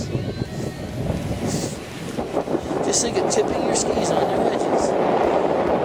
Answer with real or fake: real